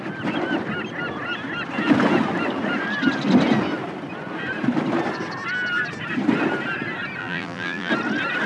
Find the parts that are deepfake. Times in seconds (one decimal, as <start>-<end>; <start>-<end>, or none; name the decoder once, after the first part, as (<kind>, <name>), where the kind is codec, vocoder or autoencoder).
7.2-7.9 (vocoder, BigVGAN v2)